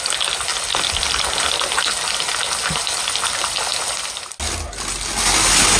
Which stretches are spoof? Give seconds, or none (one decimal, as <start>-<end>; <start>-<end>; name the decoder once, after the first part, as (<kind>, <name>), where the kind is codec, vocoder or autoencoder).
none